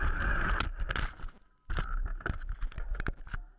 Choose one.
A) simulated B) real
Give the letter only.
B